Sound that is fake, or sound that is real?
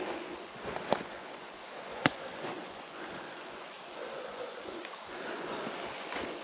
fake